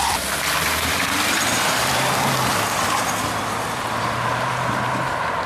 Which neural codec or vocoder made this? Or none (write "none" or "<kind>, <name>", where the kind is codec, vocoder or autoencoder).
vocoder, BigVGAN v2